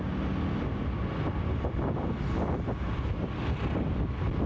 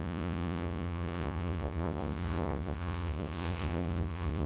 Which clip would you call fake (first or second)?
second